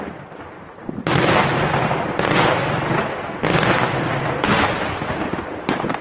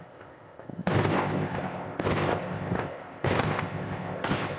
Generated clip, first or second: second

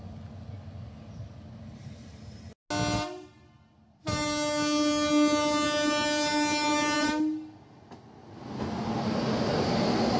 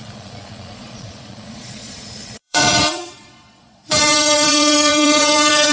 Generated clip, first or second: second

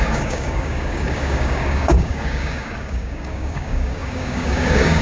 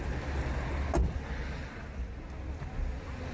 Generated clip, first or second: first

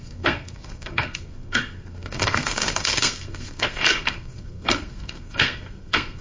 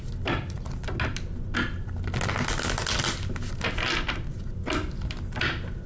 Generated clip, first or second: first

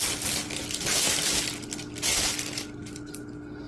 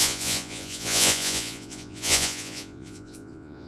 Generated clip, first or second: second